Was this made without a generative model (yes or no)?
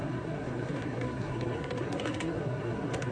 no